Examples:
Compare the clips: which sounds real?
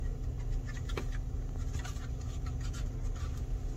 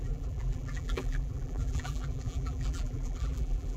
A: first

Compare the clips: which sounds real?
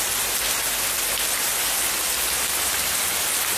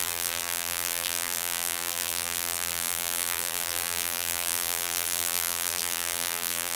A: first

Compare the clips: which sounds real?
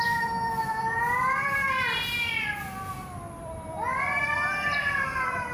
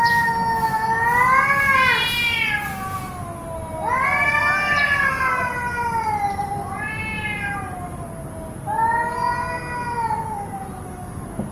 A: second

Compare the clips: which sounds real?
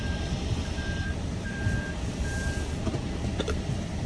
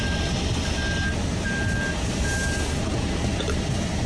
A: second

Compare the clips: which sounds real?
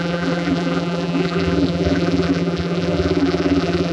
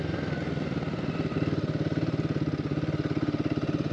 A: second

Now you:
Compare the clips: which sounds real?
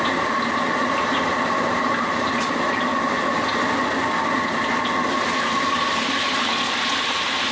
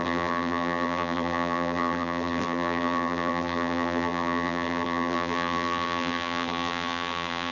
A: first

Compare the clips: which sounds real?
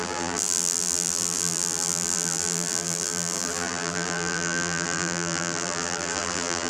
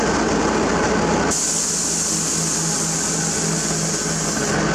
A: second